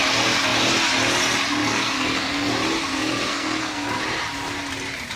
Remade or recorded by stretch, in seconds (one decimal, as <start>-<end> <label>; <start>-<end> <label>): 0.0-1.6 recorded; 1.6-2.5 remade; 2.5-2.9 recorded; 2.9-4.0 remade; 4.0-5.2 recorded